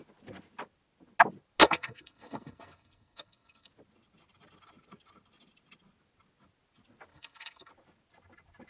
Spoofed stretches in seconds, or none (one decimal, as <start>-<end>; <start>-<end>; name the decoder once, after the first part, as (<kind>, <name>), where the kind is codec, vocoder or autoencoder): 1.6-3.7 (codec, SNAC); 7.1-7.7